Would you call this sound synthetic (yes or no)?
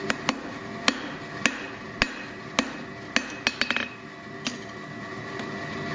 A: no